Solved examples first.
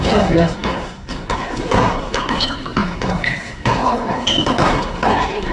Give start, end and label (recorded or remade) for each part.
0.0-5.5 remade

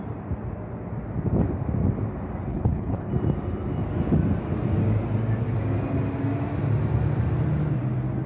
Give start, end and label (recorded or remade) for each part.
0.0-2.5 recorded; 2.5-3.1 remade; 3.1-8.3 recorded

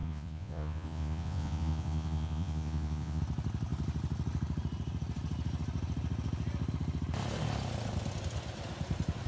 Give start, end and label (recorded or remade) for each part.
0.0-3.2 remade; 3.2-9.3 recorded

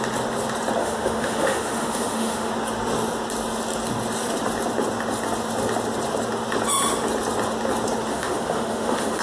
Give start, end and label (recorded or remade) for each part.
0.0-0.8 recorded; 0.8-2.5 remade; 2.5-8.1 recorded; 8.1-9.2 remade

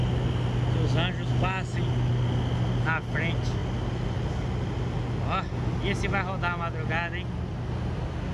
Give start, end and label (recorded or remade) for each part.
0.0-8.3 recorded

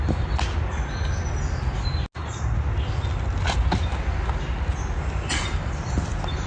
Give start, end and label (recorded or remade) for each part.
0.0-6.5 recorded